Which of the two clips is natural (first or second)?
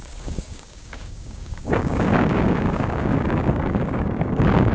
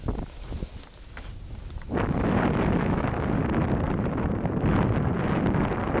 second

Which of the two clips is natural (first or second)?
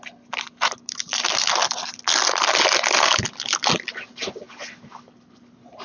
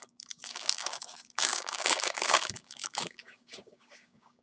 first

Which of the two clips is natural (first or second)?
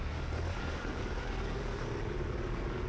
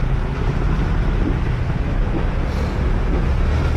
second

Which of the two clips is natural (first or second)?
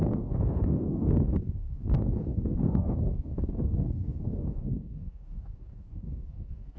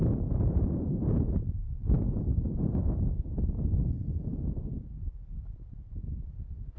second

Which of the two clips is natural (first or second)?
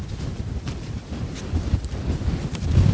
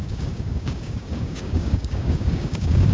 first